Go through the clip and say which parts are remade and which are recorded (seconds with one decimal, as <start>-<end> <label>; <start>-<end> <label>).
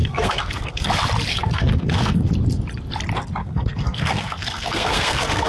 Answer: 0.0-0.9 remade; 0.9-1.3 recorded; 1.3-2.3 remade; 2.3-3.4 recorded; 3.4-5.5 remade